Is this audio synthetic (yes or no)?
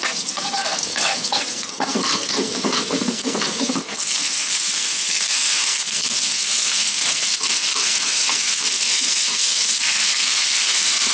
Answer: yes